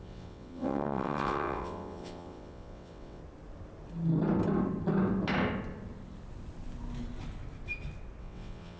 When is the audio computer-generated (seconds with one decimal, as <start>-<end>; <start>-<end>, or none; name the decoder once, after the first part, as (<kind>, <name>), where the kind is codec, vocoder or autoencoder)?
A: 0.0-3.2 (vocoder, WaveNeXt); 8.2-8.8